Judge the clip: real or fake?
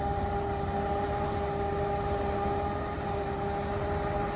real